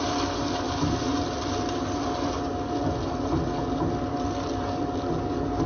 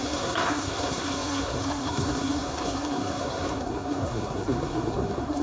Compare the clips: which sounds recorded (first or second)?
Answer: first